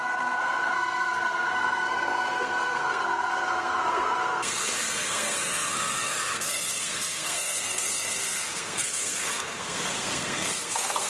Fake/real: fake